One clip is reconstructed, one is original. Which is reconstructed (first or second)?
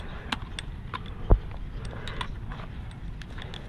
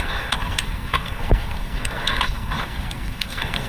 second